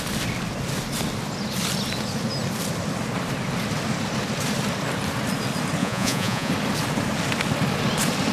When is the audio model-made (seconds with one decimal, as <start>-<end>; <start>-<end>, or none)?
5.8-6.5